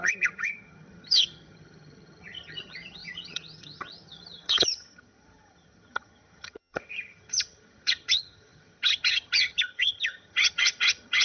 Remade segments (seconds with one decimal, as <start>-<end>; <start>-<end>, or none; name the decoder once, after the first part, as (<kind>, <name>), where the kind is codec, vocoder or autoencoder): 0.0-11.2 (vocoder, HiFi-GAN)